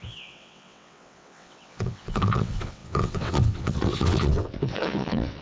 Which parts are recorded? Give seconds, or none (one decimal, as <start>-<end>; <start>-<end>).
none